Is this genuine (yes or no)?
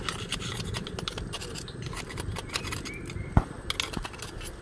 yes